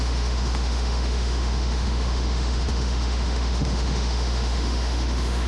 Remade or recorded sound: remade